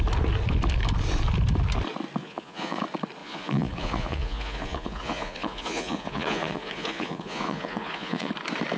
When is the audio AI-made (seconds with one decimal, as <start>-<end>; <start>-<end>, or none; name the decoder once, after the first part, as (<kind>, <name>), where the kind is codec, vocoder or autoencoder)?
2.2-2.8 (vocoder, Vocos); 3.2-8.3